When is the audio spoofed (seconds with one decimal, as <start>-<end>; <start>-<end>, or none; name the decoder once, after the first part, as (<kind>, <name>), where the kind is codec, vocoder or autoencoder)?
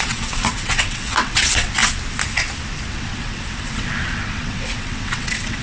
0.0-1.8 (vocoder, WaveNeXt); 2.9-5.6